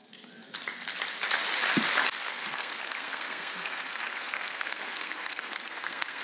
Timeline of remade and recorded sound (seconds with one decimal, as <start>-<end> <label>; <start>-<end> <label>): 0.0-2.3 recorded; 2.3-6.2 remade